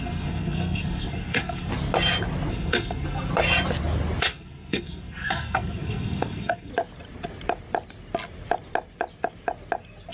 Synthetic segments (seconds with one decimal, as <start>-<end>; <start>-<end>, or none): 0.0-1.7; 2.5-3.3; 4.2-6.7